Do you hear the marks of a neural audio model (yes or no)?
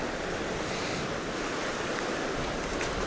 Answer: no